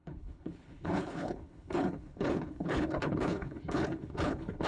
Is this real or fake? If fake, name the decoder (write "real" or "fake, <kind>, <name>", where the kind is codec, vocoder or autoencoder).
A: fake, codec, HILCodec